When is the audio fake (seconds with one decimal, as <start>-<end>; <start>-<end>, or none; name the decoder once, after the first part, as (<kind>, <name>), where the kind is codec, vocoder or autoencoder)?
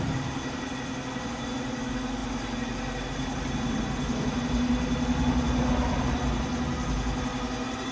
none